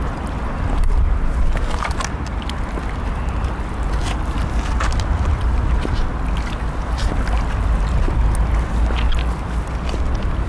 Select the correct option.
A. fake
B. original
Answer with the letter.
B